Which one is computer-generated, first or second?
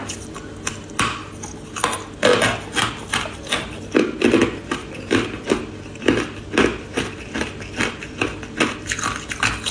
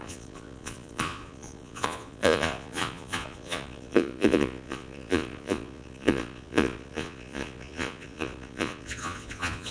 second